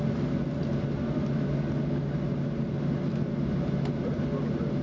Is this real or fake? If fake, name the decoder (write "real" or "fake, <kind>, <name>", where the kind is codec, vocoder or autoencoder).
real